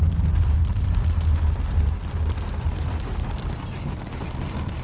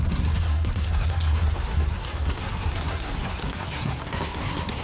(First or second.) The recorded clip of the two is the first